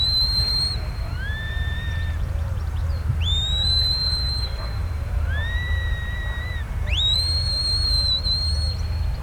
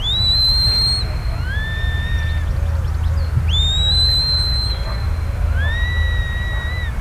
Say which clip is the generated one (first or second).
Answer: first